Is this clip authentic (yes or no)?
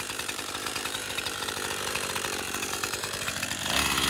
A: no